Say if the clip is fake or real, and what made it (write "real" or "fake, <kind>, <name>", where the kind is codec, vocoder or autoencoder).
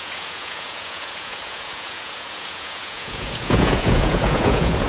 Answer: fake, vocoder, Vocos